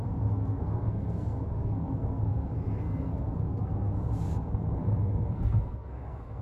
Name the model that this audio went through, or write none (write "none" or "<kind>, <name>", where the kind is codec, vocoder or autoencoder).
codec, SNAC